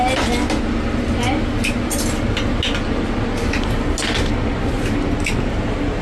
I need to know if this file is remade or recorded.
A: recorded